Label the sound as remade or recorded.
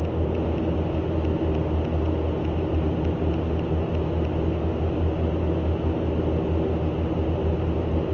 recorded